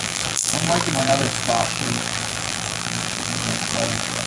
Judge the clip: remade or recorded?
remade